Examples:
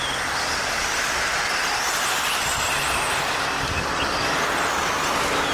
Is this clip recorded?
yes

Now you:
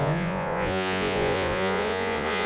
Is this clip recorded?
no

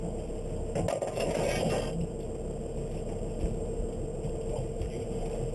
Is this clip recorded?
yes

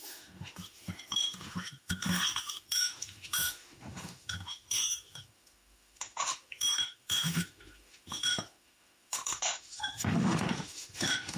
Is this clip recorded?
no